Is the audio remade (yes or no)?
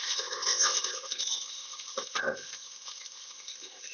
yes